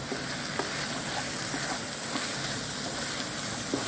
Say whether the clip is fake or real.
real